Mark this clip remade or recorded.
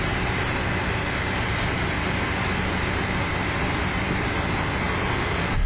recorded